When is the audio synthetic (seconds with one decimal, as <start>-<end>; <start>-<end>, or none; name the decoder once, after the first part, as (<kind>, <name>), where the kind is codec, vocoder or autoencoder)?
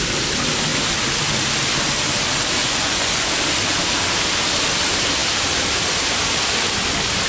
2.6-3.3 (vocoder, Vocos)